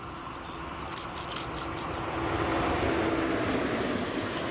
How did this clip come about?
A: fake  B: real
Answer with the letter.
B